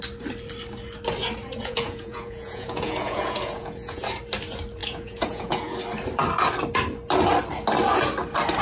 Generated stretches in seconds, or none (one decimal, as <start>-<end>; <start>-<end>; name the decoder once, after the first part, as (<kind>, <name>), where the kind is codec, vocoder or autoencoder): 1.6-4.0 (vocoder, Vocos); 4.8-5.8